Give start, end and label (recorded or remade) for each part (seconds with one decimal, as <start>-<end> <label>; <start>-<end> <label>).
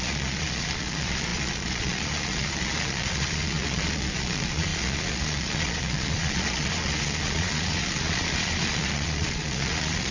0.0-10.1 remade